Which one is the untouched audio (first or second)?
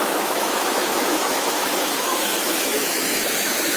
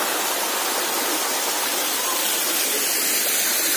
second